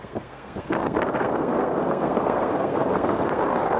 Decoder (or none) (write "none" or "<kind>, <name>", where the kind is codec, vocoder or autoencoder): codec, SNAC